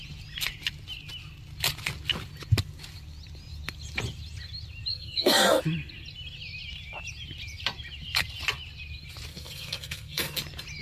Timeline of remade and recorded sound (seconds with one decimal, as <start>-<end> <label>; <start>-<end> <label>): 0.0-4.9 recorded; 4.9-5.6 remade; 5.6-9.3 recorded; 9.3-10.4 remade; 10.4-10.8 recorded